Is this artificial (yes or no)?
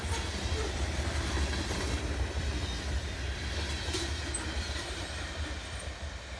no